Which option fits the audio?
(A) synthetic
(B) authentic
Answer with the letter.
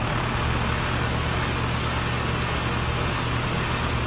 B